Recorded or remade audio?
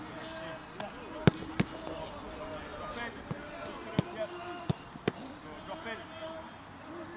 recorded